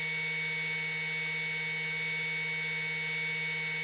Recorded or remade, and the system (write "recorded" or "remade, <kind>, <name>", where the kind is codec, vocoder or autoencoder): recorded